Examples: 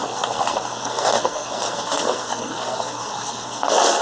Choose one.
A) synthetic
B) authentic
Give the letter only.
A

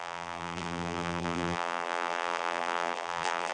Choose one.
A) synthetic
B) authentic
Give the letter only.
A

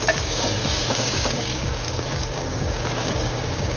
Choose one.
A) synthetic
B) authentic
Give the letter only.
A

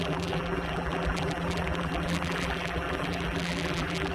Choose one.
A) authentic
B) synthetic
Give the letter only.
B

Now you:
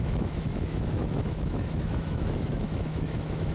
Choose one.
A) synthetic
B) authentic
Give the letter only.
A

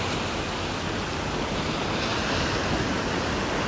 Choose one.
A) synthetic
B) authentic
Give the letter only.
B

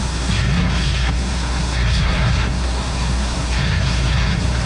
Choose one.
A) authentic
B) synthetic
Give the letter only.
B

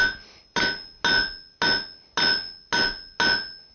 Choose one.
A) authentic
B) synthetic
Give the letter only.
A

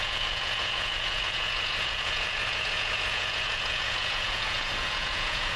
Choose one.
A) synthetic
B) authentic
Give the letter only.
A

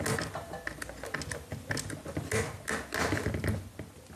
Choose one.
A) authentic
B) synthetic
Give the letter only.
A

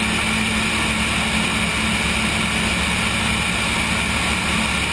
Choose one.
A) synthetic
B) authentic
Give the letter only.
B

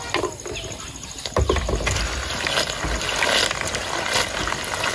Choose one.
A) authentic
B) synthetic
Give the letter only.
A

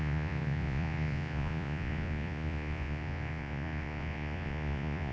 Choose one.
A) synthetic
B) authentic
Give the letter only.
A